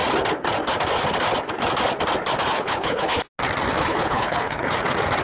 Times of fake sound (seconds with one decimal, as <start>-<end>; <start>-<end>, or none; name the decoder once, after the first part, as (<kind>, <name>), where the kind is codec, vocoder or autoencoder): 2.5-3.2 (codec, HILCodec); 3.8-4.7